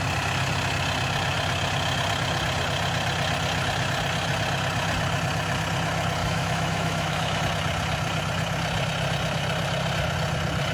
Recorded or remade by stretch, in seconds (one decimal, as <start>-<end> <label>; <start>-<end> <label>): 0.0-6.2 recorded; 6.2-7.4 remade; 7.4-10.7 recorded